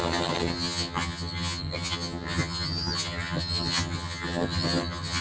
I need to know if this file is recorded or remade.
remade